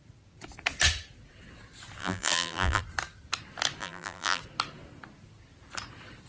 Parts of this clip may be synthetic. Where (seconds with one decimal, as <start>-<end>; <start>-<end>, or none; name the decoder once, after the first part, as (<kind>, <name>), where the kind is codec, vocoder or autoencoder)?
2.0-2.8 (vocoder, BigVGAN v2); 3.8-4.4